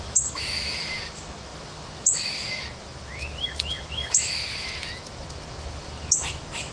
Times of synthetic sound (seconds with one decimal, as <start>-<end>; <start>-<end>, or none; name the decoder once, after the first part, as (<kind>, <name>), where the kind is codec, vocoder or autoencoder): 0.0-6.7 (autoencoder, DAC-VAE)